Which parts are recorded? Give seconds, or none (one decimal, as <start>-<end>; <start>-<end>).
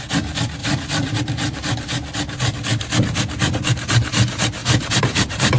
0.0-0.6; 1.2-4.6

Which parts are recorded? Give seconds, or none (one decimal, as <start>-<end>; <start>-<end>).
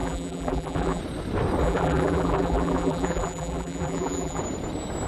1.0-1.6; 4.4-5.1